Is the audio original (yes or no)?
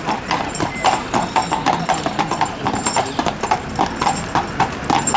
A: yes